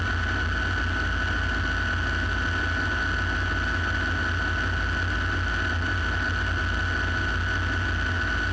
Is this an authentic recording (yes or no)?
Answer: yes